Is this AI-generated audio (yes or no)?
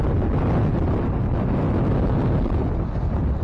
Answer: no